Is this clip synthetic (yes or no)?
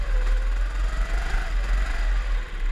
no